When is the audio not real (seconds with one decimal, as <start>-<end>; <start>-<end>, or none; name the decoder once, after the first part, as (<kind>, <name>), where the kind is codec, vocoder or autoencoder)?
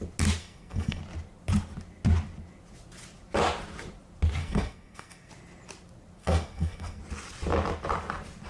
0.4-1.0 (codec, SNAC); 4.4-5.3; 6.2-7.0